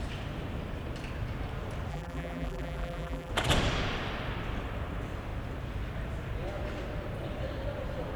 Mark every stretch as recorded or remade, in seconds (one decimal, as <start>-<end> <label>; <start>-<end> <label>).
0.0-1.9 recorded; 1.9-3.3 remade; 3.3-8.2 recorded